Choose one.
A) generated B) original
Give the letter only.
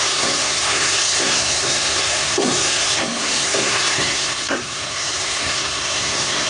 A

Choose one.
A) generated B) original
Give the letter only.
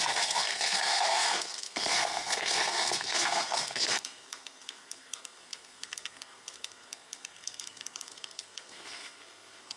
A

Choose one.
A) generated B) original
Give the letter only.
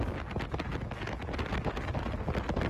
B